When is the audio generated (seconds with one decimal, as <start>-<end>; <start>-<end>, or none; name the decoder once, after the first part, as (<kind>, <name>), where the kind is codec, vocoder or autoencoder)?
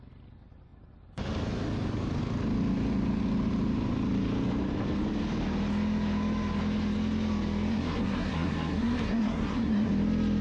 7.7-9.9 (codec, SNAC)